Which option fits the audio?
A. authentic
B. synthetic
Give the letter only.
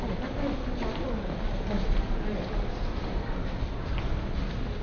A